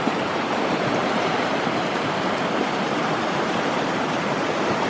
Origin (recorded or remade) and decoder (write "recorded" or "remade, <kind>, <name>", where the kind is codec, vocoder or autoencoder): remade, vocoder, BigVGAN v2